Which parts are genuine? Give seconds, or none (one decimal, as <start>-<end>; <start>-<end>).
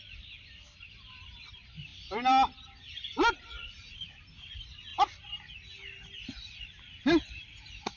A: 0.0-8.0